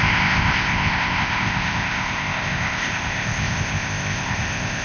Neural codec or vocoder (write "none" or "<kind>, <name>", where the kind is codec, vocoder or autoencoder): codec, ZipCodec